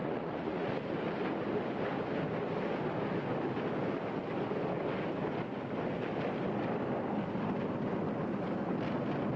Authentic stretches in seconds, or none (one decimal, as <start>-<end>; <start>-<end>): 0.9-9.4

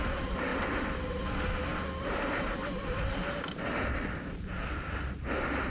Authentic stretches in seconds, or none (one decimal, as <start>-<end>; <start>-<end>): 0.0-5.7